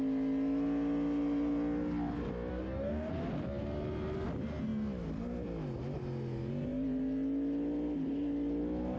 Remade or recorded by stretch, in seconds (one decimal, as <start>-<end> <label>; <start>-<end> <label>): 0.0-2.5 recorded; 2.5-3.1 remade; 3.1-9.0 recorded